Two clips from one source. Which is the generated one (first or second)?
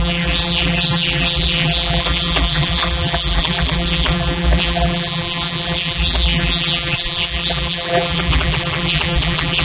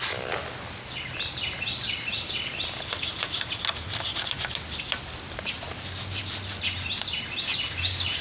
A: first